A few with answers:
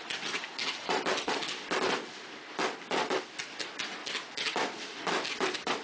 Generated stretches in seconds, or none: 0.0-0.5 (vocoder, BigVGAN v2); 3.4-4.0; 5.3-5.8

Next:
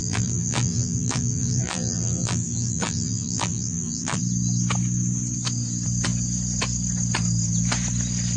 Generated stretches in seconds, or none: 0.0-4.2 (vocoder, BigVGAN v2)

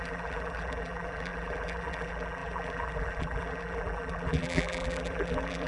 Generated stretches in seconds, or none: 0.0-5.7 (vocoder, BigVGAN v2)